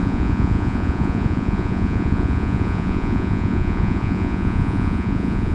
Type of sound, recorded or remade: remade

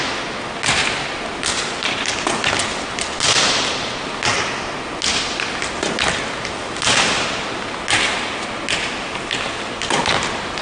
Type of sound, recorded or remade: recorded